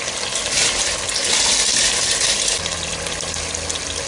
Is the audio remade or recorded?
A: recorded